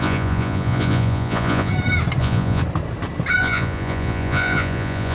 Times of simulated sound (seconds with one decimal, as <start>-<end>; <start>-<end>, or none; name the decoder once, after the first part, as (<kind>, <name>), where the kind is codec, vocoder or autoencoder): 0.0-1.7 (vocoder, Vocos); 2.2-2.6; 3.4-5.1